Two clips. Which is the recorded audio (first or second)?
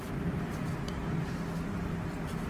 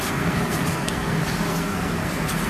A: first